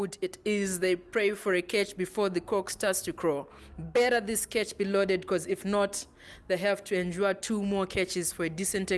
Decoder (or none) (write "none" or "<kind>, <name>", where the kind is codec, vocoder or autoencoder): none